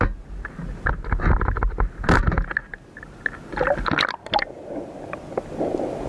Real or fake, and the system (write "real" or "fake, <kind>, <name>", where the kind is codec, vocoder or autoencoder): real